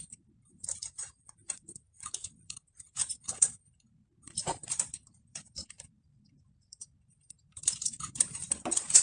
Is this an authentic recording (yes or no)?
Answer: no